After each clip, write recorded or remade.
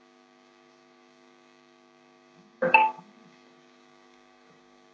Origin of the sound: remade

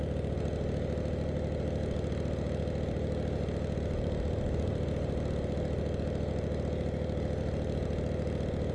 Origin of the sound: recorded